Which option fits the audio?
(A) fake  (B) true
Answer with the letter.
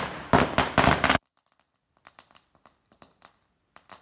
A